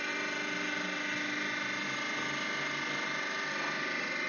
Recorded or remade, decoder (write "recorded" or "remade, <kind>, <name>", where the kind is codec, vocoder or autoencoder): recorded